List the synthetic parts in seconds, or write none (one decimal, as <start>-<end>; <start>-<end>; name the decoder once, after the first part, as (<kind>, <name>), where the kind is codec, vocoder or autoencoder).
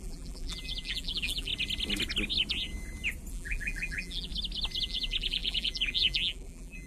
0.0-1.5 (vocoder, BigVGAN v2); 3.3-4.3; 4.8-6.9